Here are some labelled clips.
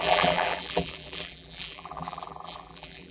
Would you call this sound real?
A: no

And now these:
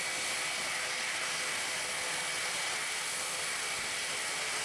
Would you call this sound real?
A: yes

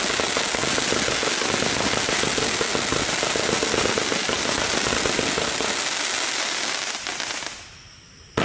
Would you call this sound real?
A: yes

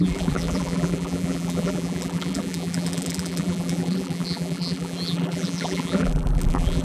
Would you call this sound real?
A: no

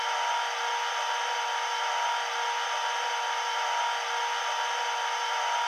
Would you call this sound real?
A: yes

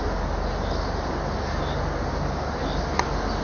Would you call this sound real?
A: yes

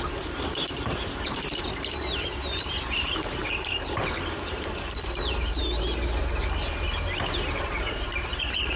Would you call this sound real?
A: no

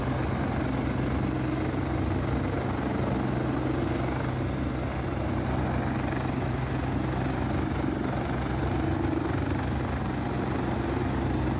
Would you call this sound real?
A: yes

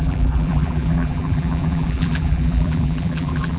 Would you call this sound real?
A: no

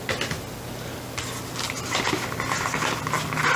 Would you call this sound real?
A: yes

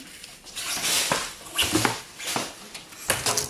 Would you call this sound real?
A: yes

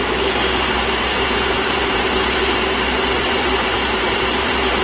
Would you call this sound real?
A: no